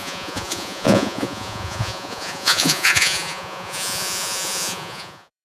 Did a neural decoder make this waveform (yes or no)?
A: yes